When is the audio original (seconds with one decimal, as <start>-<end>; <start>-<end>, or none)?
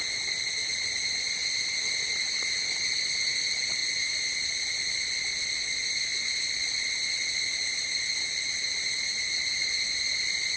0.0-10.6